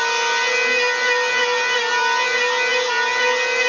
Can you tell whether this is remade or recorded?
recorded